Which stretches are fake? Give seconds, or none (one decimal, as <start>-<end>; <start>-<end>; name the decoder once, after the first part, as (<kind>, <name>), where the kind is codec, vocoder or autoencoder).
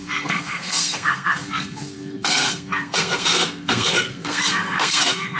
0.0-5.4 (codec, SNAC)